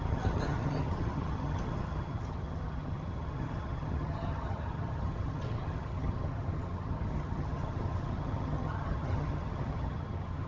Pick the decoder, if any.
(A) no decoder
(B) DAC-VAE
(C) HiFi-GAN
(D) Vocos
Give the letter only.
C